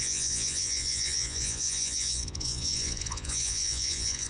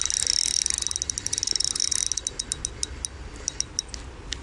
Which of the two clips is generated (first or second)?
first